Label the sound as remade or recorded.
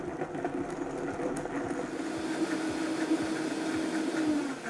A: recorded